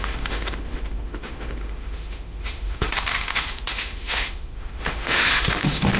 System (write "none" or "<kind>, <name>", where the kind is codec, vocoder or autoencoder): autoencoder, DAC-VAE